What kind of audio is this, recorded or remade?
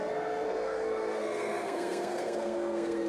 remade